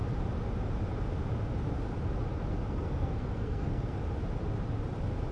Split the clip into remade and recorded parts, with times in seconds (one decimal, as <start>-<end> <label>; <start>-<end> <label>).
0.0-2.5 recorded; 2.5-4.0 remade; 4.0-5.3 recorded